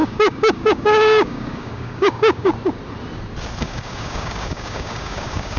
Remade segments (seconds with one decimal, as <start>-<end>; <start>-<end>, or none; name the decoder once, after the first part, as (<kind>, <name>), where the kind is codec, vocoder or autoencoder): 0.0-2.5 (codec, DAC); 3.6-5.6